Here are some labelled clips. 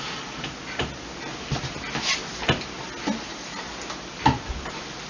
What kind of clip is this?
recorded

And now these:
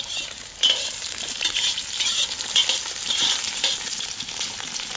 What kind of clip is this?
remade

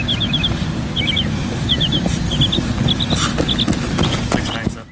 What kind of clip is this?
recorded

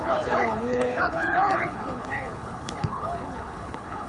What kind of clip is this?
remade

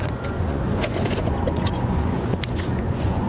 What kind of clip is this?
remade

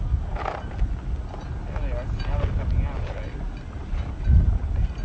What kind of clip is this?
recorded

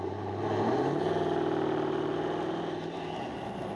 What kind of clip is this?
recorded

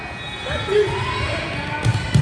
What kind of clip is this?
recorded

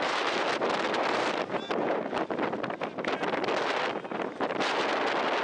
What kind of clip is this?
recorded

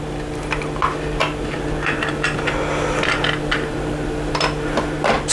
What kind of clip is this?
recorded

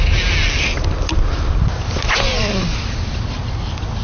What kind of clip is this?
recorded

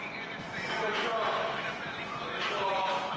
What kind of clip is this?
remade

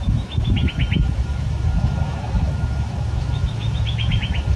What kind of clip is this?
remade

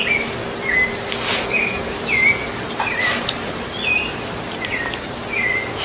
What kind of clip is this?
recorded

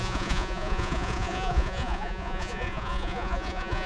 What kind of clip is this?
remade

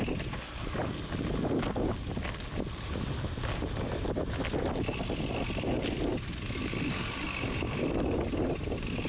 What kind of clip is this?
recorded